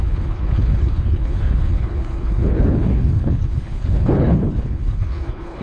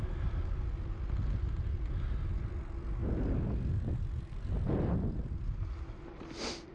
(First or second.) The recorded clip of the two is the second